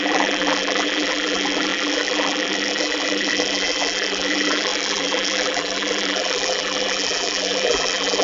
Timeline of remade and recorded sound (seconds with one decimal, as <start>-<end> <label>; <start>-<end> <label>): 0.0-8.2 remade